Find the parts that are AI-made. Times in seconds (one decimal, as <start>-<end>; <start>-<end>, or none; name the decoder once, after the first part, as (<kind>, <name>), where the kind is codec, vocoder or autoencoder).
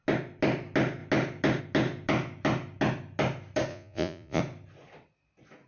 3.7-4.4 (vocoder, Vocos)